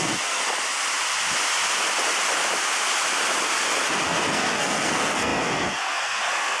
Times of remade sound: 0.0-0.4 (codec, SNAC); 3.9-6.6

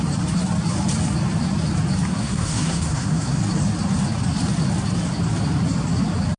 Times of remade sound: 2.1-3.4 (codec, SNAC)

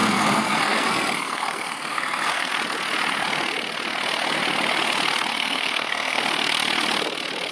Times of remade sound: 0.0-2.5 (codec, SNAC); 5.3-6.2

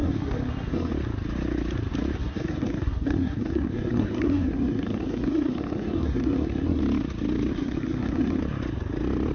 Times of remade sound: 0.0-0.9 (codec, SNAC); 2.2-6.8; 7.5-8.4